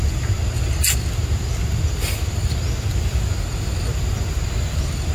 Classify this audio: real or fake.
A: real